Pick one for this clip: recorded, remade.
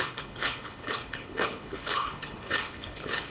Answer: remade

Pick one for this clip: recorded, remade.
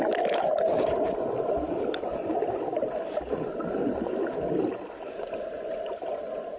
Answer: recorded